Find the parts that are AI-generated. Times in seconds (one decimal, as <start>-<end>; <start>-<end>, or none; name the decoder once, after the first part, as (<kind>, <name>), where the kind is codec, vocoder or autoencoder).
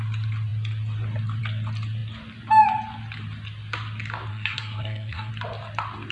4.3-5.3 (codec, SNAC)